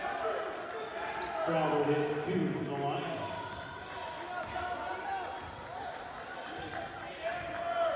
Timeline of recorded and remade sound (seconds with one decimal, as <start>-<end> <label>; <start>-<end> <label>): 0.0-8.0 recorded